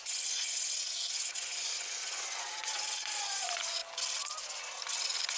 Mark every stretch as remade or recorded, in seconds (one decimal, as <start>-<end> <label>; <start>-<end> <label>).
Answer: 0.0-3.8 remade; 3.8-5.4 recorded